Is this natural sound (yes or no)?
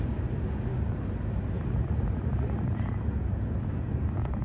yes